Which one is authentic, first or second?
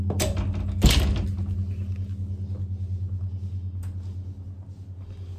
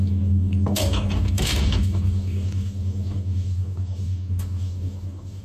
first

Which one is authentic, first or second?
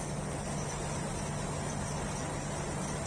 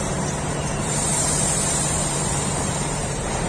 first